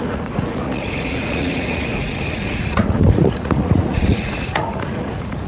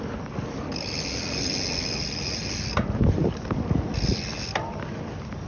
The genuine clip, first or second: second